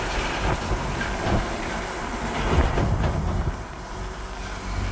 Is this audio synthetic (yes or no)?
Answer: yes